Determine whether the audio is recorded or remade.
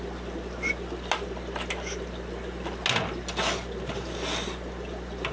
recorded